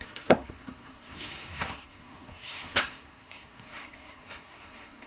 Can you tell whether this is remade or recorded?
remade